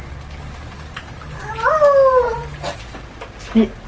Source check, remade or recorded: recorded